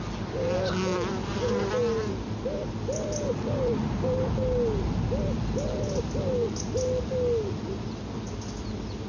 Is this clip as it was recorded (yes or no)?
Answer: yes